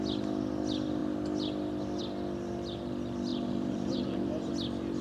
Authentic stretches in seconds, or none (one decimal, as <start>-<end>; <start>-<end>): 0.0-3.3; 4.5-5.0